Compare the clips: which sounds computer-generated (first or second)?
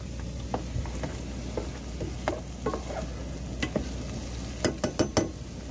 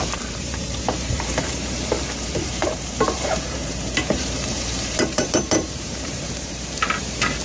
second